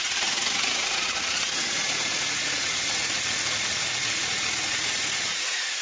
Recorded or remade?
remade